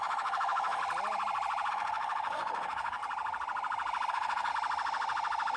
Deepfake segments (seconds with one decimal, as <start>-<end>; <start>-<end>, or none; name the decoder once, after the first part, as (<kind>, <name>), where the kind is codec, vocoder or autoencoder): 0.0-0.8 (autoencoder, DAC-VAE); 1.7-3.0; 4.1-4.5